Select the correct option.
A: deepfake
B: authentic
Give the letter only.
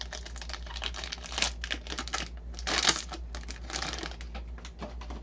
B